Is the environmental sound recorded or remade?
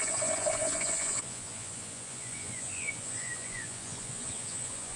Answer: remade